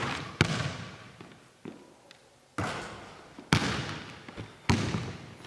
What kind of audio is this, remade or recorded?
recorded